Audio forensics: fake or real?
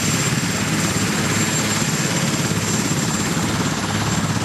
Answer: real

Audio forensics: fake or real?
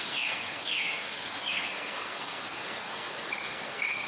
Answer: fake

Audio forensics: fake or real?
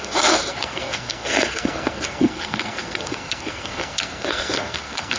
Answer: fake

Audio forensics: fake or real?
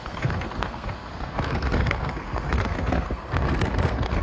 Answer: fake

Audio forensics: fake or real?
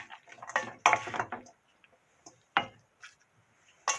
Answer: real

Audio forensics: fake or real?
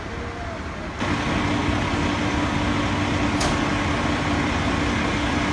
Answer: real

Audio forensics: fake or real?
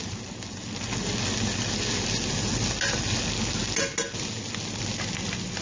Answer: real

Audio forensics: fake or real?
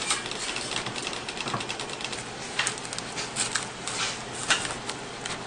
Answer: real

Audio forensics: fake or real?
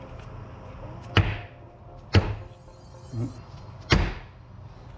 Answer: real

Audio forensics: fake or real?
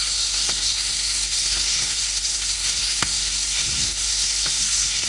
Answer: fake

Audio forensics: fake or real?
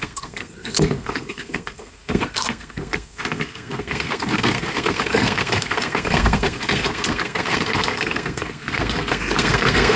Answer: fake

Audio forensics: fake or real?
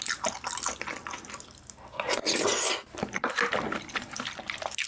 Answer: real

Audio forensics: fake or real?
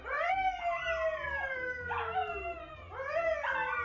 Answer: real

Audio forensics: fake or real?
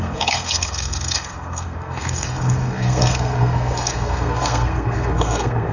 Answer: fake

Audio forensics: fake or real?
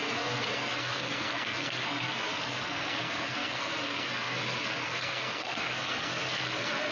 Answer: fake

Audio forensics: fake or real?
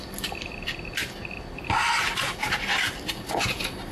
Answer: real